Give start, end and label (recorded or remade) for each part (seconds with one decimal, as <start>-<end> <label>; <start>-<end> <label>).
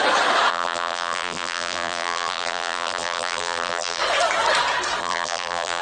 0.0-0.5 recorded; 0.5-4.0 remade; 4.0-5.0 recorded; 5.0-5.8 remade